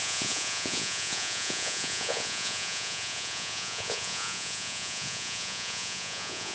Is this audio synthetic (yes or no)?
yes